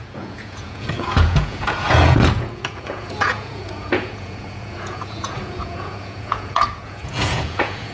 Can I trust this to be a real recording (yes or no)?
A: no